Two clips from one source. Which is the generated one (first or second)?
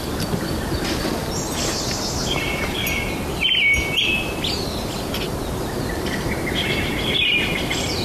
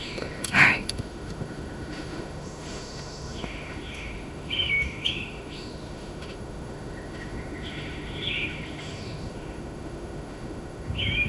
second